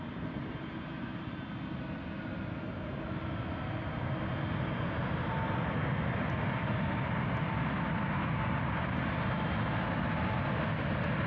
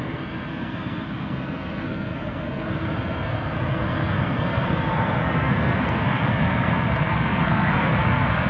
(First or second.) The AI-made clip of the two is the second